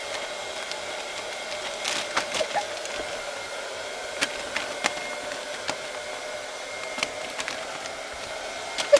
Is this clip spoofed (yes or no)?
no